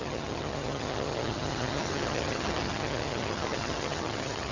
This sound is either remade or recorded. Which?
remade